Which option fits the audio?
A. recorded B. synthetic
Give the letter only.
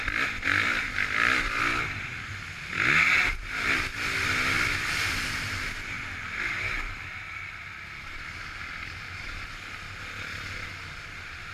A